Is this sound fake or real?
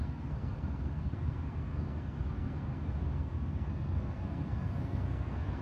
fake